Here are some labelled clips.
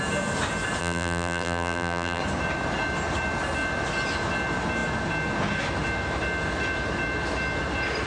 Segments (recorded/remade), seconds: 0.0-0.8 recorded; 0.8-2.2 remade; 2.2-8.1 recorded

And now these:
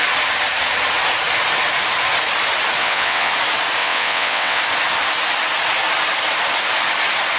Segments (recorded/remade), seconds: 0.0-2.8 recorded; 2.8-3.3 remade; 3.3-3.8 recorded; 3.8-4.6 remade; 4.6-7.4 recorded

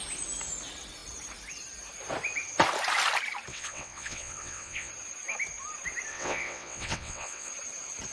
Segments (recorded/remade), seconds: 0.0-3.5 recorded; 3.5-4.9 remade; 4.9-6.1 recorded; 6.1-7.5 remade; 7.5-8.1 recorded

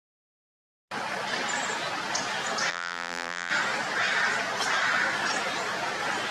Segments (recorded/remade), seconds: 0.0-2.7 recorded; 2.7-3.5 remade; 3.5-6.3 recorded

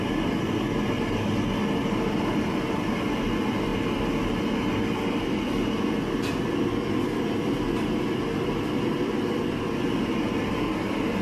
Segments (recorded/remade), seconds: 0.0-11.2 recorded

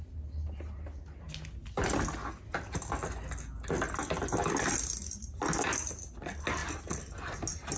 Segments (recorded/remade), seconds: 0.0-7.8 recorded